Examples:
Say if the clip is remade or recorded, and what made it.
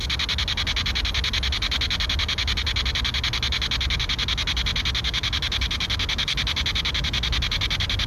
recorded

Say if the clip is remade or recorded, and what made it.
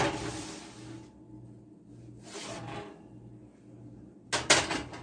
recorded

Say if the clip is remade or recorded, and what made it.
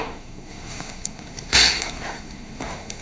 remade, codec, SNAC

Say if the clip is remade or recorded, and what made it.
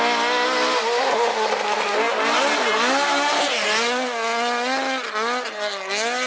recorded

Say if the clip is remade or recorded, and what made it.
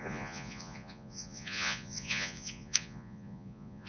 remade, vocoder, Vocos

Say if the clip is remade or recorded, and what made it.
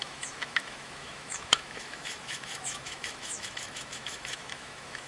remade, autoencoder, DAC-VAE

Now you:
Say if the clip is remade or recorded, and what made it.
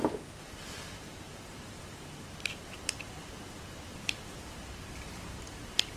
remade, vocoder, BigVGAN v2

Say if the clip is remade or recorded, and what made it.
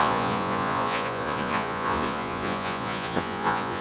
remade, vocoder, Vocos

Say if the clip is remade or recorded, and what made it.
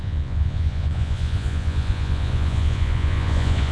remade, vocoder, Vocos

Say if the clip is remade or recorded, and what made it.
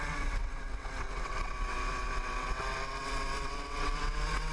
remade, vocoder, WaveNeXt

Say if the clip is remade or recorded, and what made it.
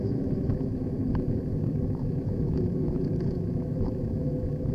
remade, autoencoder, DAC-VAE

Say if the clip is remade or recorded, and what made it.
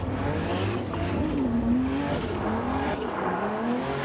remade, codec, DAC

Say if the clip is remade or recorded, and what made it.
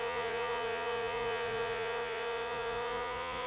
remade, vocoder, Vocos